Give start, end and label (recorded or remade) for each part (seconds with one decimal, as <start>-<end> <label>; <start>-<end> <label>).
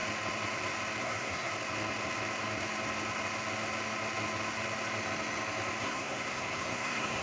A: 0.0-1.0 recorded; 1.0-1.5 remade; 1.5-5.8 recorded; 5.8-7.2 remade